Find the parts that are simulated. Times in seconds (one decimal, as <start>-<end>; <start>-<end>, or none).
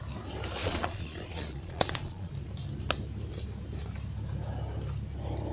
0.6-2.3